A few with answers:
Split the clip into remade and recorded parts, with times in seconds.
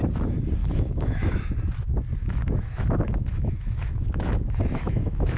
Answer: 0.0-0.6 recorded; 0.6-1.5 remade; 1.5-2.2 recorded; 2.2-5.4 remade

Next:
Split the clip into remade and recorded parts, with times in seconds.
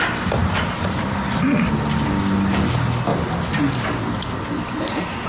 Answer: 0.0-5.3 recorded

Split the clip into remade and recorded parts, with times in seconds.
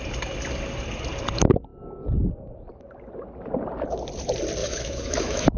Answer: 0.0-4.6 recorded; 4.6-5.6 remade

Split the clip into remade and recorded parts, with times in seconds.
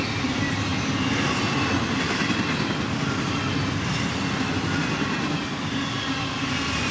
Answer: 0.0-6.9 recorded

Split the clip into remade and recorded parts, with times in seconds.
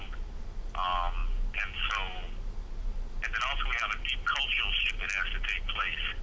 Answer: 0.0-6.2 recorded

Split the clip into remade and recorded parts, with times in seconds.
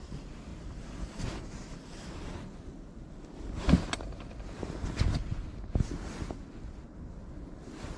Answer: 0.0-8.0 recorded